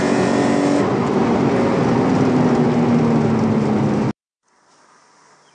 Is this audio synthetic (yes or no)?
no